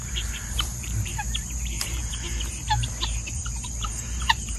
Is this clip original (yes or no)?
no